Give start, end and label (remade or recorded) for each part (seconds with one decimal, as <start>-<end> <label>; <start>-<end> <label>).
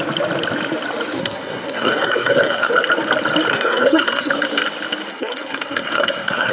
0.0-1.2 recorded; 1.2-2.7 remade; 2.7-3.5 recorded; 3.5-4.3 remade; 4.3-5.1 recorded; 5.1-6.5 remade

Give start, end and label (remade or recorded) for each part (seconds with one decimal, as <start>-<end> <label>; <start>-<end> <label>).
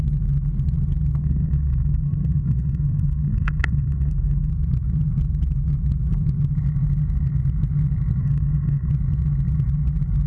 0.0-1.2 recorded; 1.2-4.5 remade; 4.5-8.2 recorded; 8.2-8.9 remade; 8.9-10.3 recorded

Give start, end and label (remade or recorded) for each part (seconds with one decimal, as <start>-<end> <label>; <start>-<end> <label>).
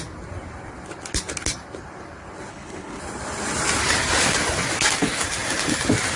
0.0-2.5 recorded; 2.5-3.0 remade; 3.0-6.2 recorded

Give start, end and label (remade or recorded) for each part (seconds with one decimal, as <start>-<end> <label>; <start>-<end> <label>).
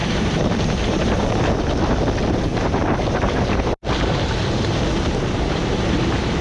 0.0-1.4 remade; 1.4-2.5 recorded; 2.5-6.4 remade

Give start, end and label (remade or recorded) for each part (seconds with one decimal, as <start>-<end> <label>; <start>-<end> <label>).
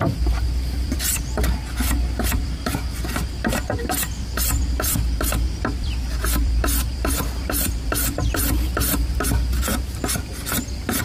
0.0-11.0 remade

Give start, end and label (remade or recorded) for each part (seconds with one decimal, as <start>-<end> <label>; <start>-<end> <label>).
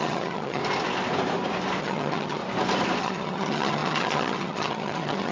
0.0-0.6 remade; 0.6-1.8 recorded; 1.8-2.4 remade; 2.4-3.0 recorded; 3.0-5.3 remade